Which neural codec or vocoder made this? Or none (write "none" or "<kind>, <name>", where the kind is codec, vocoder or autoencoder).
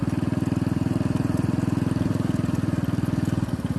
none